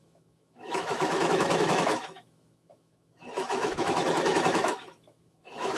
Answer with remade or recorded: remade